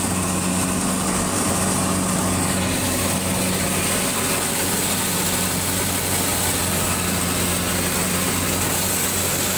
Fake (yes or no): no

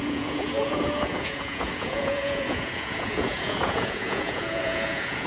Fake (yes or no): yes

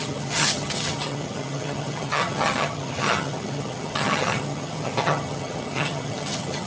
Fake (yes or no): yes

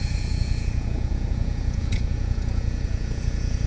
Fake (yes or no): yes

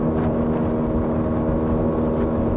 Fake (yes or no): no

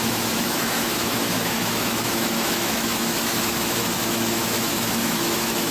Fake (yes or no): yes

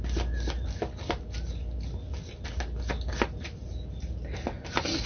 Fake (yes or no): no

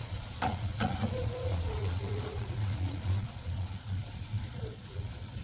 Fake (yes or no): yes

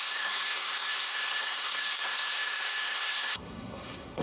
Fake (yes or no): yes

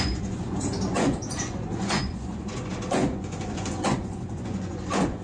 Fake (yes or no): yes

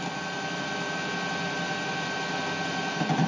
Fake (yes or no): no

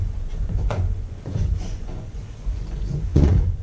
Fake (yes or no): yes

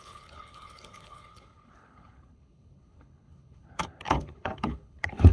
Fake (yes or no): yes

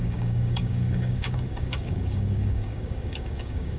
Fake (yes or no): yes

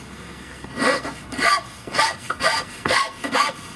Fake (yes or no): yes